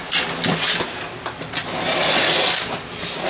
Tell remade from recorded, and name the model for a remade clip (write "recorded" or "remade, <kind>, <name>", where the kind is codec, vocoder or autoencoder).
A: recorded